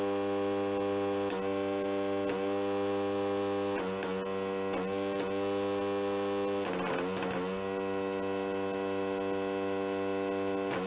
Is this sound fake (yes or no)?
no